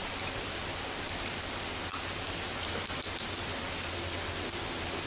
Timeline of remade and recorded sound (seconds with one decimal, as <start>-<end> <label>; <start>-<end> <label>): 0.0-5.1 recorded